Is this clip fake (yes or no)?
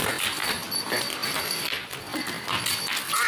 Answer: no